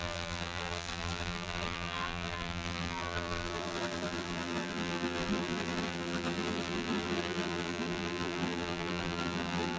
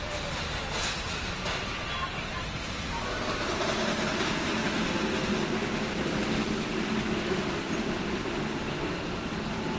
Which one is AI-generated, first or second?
first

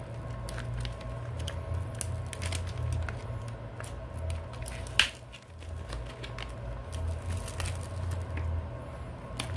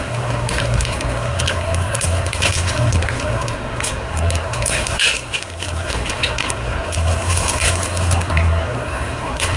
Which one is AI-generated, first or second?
second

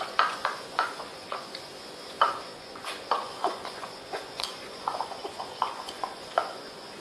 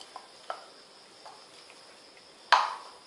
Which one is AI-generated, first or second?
first